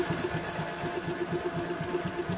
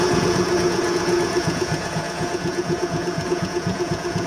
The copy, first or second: second